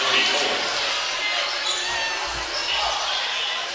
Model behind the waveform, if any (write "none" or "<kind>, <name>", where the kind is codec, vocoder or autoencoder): none